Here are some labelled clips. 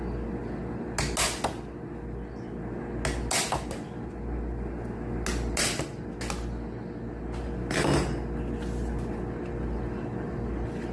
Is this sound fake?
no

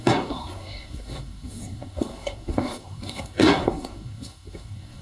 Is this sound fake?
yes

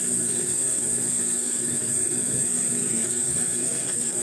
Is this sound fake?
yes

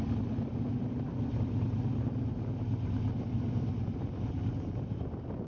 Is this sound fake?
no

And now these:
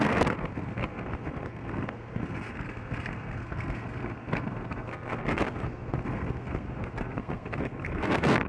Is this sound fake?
yes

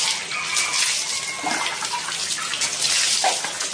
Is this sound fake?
no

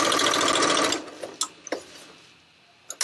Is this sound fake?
no